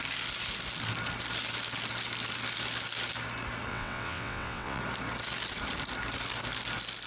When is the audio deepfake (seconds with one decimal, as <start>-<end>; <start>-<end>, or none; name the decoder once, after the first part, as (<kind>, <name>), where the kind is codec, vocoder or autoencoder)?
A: 3.7-4.8 (vocoder, WaveNeXt)

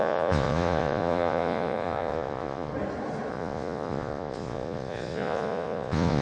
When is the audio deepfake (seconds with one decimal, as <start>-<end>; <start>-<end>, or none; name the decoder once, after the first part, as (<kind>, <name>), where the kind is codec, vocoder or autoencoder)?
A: 0.0-2.7 (vocoder, Vocos); 3.3-6.2

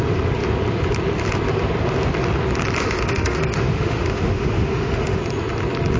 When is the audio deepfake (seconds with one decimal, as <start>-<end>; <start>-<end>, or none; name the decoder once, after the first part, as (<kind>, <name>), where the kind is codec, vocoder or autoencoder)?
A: 2.8-5.2 (autoencoder, DAC-VAE)

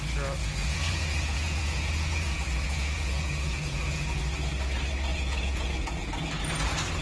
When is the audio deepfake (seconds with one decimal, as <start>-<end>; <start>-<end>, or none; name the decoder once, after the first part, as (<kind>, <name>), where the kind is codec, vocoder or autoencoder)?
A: 0.4-4.2 (vocoder, Vocos); 5.1-6.1

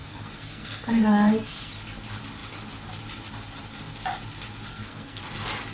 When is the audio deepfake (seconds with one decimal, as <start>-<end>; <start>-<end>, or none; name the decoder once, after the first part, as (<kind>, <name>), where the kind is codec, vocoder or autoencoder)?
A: 0.0-1.7 (codec, SNAC); 4.7-5.2